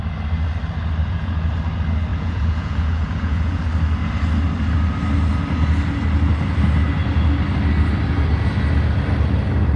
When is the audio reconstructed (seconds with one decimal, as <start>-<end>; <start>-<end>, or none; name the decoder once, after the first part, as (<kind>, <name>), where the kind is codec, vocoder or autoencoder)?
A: 1.0-1.5 (vocoder, Vocos); 2.1-3.6

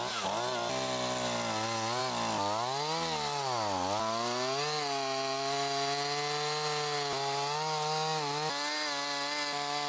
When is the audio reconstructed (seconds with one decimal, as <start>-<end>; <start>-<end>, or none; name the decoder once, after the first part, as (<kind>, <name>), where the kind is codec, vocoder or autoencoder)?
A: none